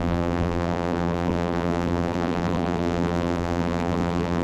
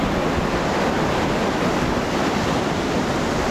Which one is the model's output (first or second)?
first